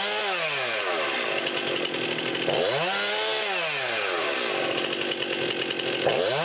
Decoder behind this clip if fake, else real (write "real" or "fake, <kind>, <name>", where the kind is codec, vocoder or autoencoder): real